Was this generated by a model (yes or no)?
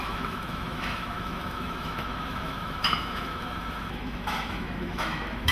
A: yes